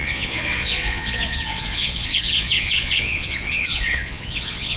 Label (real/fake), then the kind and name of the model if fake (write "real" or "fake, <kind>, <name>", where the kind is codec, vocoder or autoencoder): fake, vocoder, Vocos